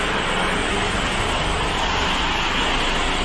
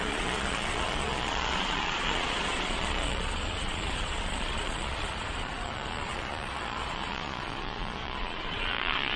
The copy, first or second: second